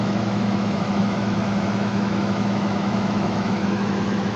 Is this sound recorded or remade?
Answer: remade